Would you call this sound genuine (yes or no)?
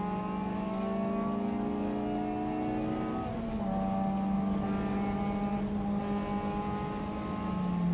yes